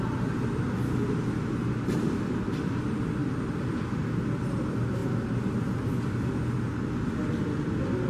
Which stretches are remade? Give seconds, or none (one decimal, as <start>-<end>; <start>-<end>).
none